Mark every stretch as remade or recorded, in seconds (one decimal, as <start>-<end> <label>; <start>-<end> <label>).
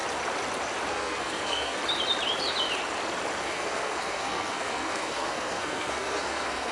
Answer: 0.0-0.9 recorded; 0.9-1.8 remade; 1.8-3.4 recorded; 3.4-6.7 remade